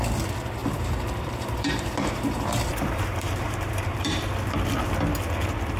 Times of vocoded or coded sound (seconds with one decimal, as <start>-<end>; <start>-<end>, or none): 0.6-4.1